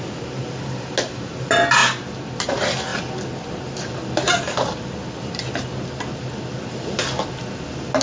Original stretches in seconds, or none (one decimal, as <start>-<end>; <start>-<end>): 0.0-8.0